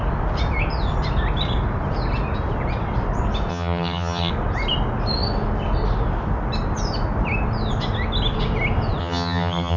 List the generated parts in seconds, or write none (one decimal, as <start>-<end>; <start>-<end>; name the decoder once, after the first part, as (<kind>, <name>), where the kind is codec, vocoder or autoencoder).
3.5-4.3 (vocoder, HiFi-GAN); 9.0-9.8